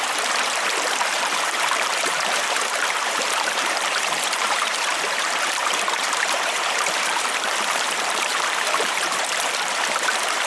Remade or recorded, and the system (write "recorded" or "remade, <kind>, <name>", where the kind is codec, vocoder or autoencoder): remade, vocoder, BigVGAN v2